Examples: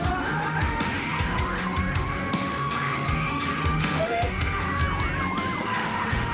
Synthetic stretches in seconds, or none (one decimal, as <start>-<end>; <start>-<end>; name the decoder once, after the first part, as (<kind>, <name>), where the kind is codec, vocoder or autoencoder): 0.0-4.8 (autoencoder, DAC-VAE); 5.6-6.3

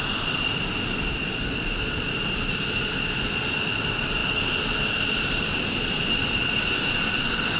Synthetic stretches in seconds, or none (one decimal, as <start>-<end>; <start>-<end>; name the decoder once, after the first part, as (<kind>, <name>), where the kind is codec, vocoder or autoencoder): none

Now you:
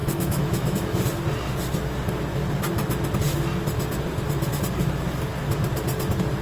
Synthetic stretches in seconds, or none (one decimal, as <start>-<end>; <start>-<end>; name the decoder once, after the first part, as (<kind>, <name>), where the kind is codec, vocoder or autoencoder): 0.0-1.0 (autoencoder, DAC-VAE)

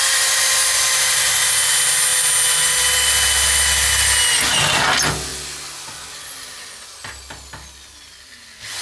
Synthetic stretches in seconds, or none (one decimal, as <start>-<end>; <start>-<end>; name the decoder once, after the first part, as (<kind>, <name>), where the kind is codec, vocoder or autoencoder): none

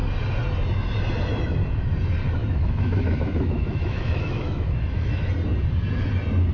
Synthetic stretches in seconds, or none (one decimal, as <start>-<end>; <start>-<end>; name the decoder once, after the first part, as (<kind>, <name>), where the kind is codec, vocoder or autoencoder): 2.4-5.3 (autoencoder, DAC-VAE)

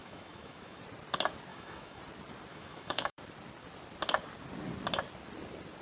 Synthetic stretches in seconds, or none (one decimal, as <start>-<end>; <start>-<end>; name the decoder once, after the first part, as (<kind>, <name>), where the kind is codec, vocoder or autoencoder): 0.0-0.8 (autoencoder, DAC-VAE); 1.5-2.0; 2.5-3.2

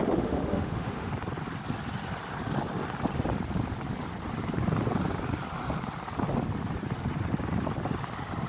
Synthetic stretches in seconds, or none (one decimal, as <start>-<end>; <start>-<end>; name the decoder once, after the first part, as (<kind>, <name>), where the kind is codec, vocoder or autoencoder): 0.0-1.1 (autoencoder, DAC-VAE)